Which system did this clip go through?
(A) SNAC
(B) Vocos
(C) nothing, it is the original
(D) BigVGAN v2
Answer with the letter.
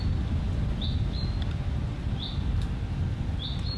C